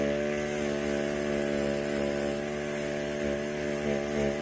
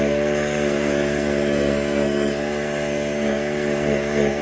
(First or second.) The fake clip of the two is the second